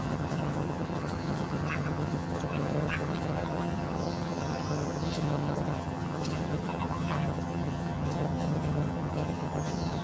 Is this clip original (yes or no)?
no